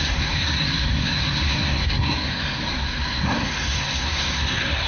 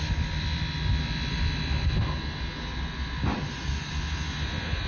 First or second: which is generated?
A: first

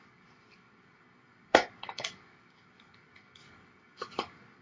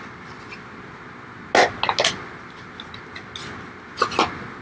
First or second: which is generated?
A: first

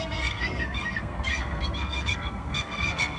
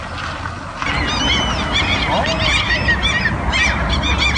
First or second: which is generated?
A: first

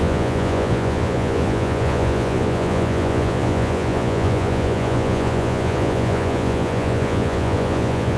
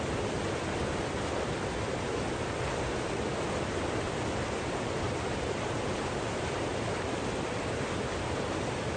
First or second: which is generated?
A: first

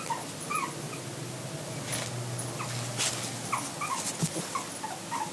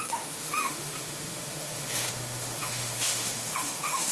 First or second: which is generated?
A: second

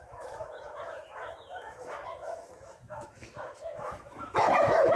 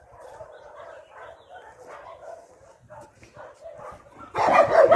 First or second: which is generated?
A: first